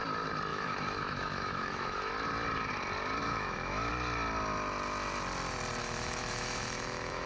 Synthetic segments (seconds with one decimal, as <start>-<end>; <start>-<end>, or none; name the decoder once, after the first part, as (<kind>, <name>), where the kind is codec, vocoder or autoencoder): 0.5-2.1 (autoencoder, DAC-VAE); 3.2-3.9; 5.8-7.3